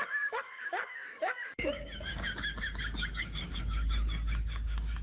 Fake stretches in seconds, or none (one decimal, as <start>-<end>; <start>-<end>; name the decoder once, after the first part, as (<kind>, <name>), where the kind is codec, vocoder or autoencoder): 0.0-5.0 (codec, DAC)